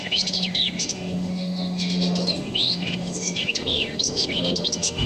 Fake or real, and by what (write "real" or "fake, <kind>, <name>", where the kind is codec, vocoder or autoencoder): fake, autoencoder, DAC-VAE